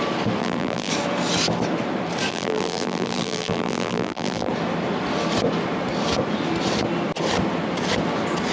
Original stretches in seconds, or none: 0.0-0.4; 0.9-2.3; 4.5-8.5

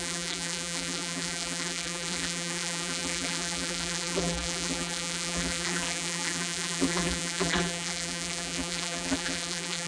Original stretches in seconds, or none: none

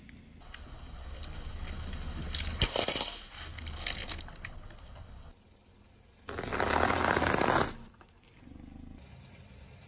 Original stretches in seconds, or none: 0.0-9.9

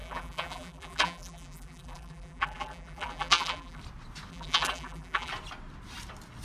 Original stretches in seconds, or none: 3.8-4.3; 5.3-6.4

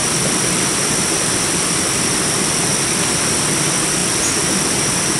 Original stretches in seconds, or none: 3.1-5.2

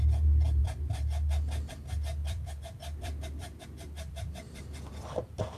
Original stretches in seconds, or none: 0.0-0.6; 1.7-2.2